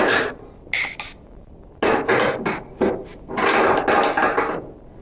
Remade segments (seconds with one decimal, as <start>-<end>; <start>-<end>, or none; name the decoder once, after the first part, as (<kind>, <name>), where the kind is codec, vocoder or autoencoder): 3.1-3.8 (vocoder, BigVGAN v2)